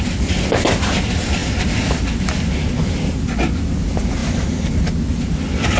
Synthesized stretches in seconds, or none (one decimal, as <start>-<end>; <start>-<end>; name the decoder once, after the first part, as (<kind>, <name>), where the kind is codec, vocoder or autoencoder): none